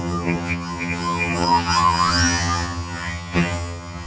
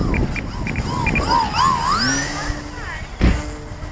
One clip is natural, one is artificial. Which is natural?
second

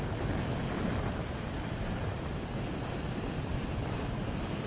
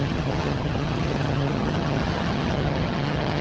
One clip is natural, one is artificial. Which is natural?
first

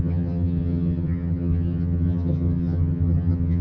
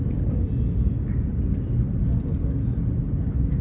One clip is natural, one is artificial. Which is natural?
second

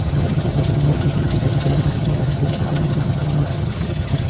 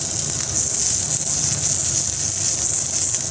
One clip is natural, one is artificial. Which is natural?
second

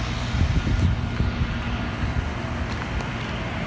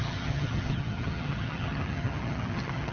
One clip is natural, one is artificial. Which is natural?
first